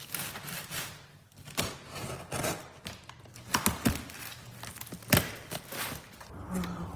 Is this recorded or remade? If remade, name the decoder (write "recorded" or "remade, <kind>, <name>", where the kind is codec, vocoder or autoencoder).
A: recorded